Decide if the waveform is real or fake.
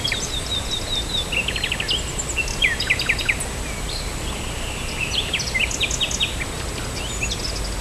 real